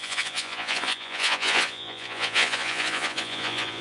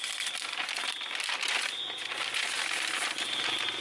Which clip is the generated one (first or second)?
first